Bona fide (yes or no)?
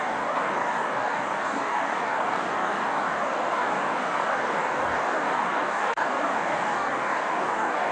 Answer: no